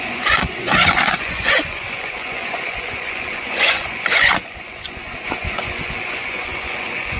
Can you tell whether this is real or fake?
fake